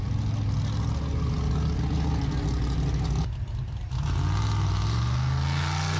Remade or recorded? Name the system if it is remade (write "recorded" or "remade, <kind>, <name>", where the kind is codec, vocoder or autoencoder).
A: recorded